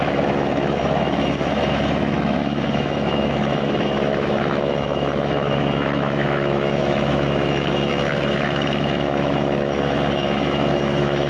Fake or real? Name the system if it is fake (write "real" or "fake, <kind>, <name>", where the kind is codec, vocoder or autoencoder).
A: fake, autoencoder, DAC-VAE